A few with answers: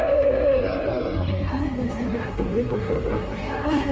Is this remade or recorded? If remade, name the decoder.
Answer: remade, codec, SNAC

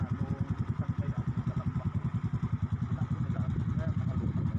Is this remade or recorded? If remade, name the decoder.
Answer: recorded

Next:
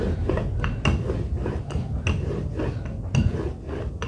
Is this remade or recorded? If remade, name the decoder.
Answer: recorded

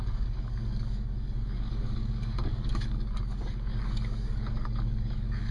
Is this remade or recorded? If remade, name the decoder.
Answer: remade, codec, DAC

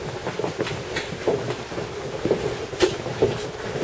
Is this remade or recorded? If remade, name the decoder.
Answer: recorded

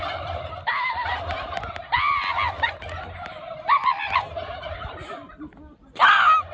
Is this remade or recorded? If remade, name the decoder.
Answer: recorded